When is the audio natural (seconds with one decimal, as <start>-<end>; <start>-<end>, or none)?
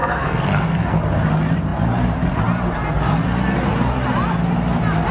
1.0-5.1